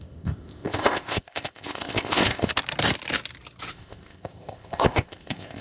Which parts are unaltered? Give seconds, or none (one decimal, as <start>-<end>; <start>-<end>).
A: 2.5-3.7